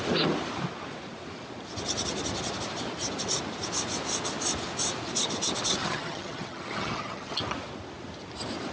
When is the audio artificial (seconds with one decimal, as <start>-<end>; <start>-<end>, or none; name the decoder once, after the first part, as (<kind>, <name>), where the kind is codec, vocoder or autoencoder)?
5.8-7.4 (vocoder, HiFi-GAN)